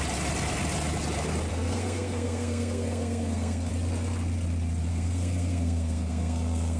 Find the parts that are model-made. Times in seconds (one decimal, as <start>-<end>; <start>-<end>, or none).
1.5-3.7; 4.9-6.8